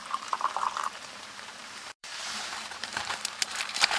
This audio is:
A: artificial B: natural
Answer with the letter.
A